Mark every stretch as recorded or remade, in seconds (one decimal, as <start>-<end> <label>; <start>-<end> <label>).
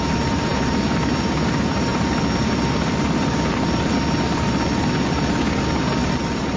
0.0-0.5 remade; 0.5-1.2 recorded; 1.2-1.9 remade; 1.9-5.9 recorded; 5.9-6.6 remade